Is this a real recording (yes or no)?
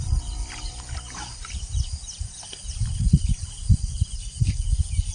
yes